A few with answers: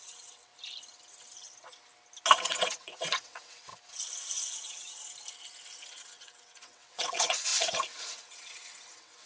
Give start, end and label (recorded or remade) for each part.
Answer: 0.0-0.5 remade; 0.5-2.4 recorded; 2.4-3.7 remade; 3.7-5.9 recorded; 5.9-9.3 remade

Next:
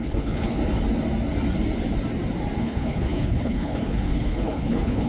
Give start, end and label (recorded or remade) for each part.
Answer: 0.0-0.6 remade; 0.6-2.6 recorded; 2.6-5.1 remade

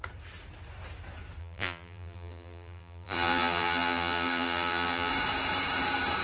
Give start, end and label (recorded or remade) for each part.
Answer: 0.0-1.4 recorded; 1.4-5.1 remade; 5.1-6.2 recorded

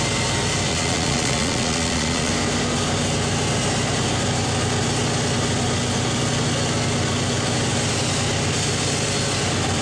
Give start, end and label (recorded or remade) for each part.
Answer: 0.0-0.7 recorded; 0.7-2.3 remade; 2.3-9.8 recorded

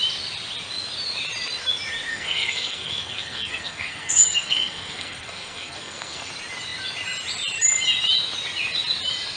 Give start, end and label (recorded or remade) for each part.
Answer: 0.0-2.1 recorded; 2.1-6.3 remade; 6.3-9.4 recorded